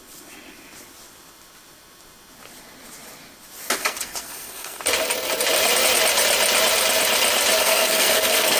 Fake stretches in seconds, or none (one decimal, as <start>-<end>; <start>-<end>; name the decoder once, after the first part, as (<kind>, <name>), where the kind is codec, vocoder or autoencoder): 3.8-4.8 (codec, SNAC); 7.6-8.6